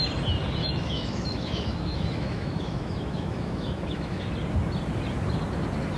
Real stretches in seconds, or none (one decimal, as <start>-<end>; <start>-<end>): 0.0-0.6; 4.2-6.0

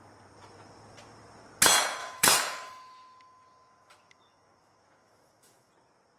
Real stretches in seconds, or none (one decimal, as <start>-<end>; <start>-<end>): 0.0-2.0; 5.7-6.2

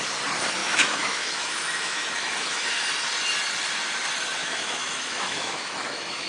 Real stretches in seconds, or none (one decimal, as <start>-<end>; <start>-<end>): 0.0-0.6; 2.8-4.4

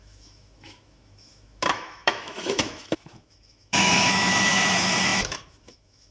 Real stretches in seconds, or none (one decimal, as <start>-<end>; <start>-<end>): none

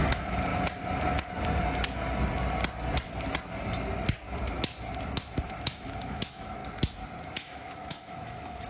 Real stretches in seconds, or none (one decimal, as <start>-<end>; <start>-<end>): 0.5-5.4; 6.6-7.2